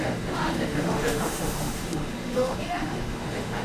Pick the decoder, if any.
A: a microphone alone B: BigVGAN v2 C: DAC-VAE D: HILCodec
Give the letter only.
C